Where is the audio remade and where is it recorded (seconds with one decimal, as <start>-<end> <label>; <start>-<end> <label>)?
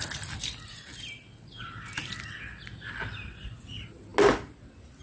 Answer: 0.0-5.0 recorded